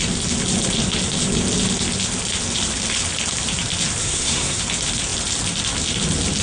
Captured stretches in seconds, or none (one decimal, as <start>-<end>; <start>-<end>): 0.0-4.0; 4.6-6.4